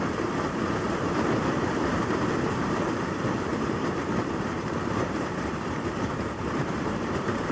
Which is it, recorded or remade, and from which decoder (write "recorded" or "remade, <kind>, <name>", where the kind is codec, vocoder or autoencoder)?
remade, vocoder, BigVGAN v2